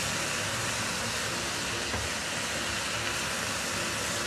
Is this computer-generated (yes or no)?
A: no